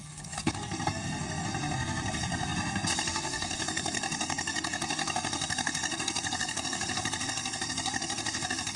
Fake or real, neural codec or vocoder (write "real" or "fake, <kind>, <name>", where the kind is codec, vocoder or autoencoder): fake, codec, SNAC